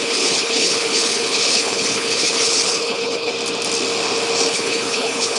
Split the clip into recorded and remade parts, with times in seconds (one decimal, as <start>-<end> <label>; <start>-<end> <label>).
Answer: 0.0-3.3 remade; 3.3-4.5 recorded; 4.5-5.4 remade